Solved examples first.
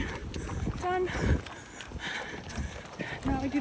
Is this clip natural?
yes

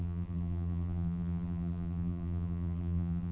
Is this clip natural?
no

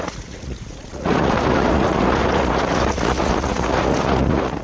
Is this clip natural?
no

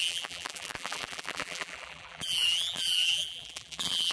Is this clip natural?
no